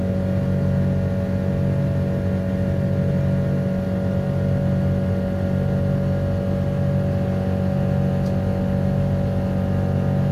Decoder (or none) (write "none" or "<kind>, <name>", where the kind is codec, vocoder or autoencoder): none